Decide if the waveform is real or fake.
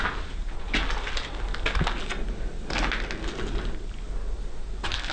real